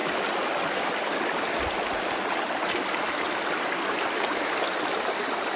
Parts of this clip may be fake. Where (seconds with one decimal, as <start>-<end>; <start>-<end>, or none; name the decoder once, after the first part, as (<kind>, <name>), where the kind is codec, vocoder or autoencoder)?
none